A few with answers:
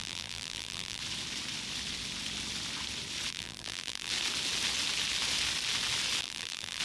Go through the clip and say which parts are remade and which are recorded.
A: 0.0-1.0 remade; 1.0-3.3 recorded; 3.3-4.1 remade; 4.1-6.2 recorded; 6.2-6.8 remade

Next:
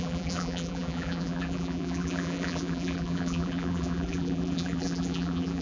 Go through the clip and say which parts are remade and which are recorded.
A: 0.0-5.6 remade

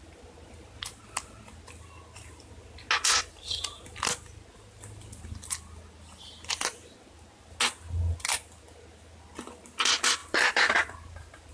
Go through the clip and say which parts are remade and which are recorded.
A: 0.0-10.2 recorded; 10.2-11.5 remade